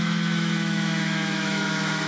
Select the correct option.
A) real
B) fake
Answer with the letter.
B